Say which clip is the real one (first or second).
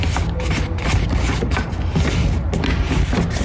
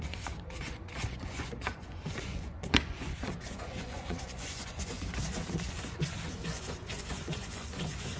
first